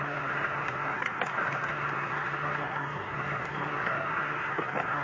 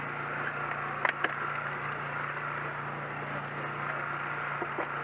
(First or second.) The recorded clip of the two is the second